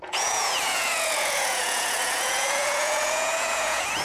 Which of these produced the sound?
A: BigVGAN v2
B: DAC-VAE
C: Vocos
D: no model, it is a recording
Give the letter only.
C